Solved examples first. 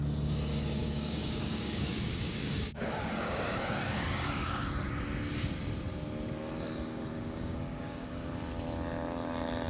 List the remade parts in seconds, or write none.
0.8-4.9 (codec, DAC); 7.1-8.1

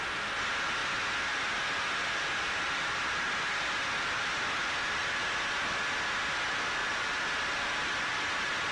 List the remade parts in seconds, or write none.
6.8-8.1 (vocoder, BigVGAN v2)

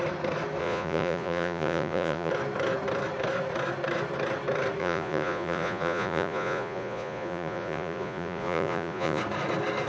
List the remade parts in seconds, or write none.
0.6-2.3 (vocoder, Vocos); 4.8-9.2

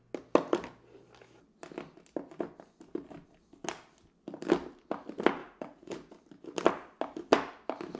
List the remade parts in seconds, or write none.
5.4-6.1 (vocoder, Vocos)